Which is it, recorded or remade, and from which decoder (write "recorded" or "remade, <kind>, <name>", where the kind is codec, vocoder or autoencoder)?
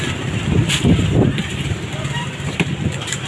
remade, vocoder, BigVGAN v2